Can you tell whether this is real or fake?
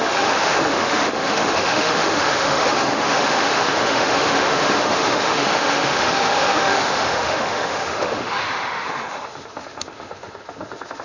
fake